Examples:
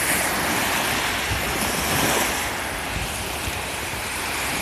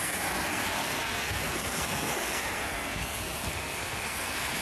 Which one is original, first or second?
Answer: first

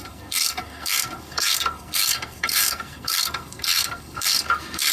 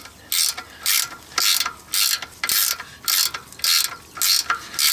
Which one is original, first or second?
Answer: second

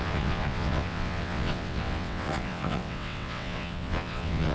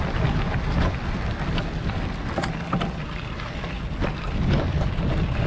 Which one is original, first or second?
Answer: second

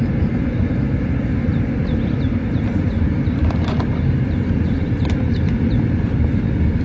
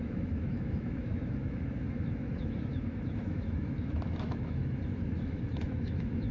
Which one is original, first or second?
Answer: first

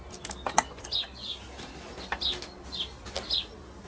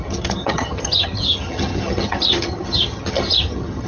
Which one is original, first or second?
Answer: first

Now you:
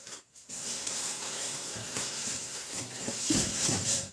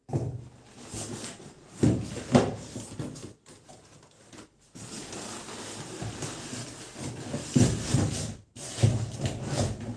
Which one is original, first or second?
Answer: second